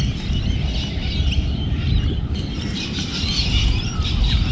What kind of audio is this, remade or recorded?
recorded